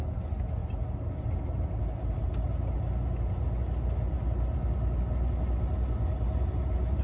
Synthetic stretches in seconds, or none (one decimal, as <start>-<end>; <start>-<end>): none